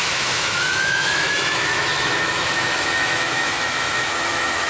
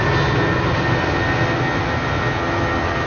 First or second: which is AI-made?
first